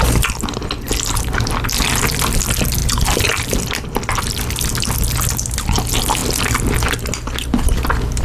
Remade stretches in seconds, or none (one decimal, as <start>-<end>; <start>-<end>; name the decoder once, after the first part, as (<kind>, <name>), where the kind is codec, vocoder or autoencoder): 2.8-3.7 (vocoder, BigVGAN v2); 6.2-6.9